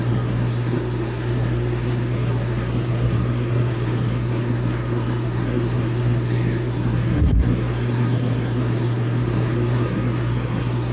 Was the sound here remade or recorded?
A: remade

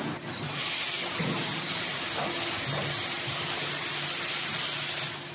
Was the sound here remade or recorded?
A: recorded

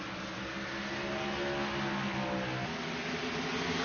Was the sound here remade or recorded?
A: recorded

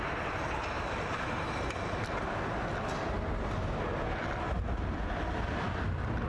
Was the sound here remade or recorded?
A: recorded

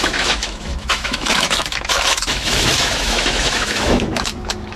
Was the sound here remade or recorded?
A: remade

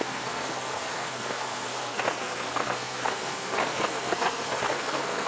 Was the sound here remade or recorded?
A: remade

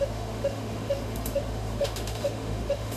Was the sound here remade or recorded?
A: remade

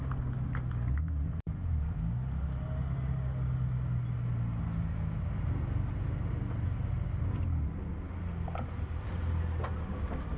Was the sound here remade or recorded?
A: recorded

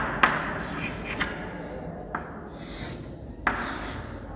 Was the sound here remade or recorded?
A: recorded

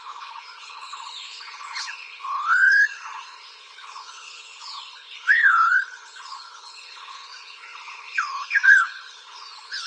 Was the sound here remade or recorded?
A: remade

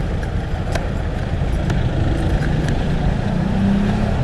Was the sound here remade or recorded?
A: recorded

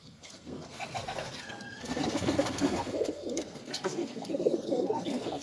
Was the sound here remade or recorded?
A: remade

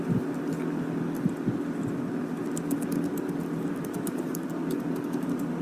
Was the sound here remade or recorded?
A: recorded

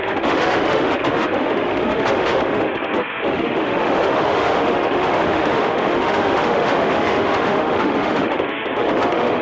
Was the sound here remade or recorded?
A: remade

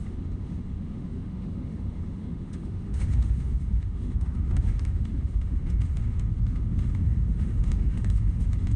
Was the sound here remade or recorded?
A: remade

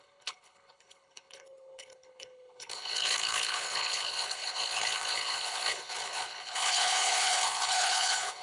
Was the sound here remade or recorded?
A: remade